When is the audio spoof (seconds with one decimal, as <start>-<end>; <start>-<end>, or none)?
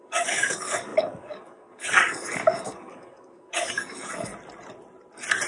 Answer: 0.0-4.3